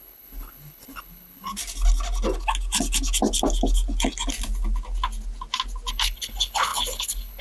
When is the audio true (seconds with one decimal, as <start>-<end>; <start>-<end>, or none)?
1.5-5.9